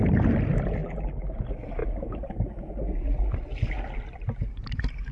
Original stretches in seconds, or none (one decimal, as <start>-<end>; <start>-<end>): 0.0-0.8; 1.3-5.1